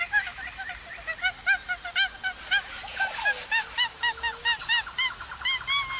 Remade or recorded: recorded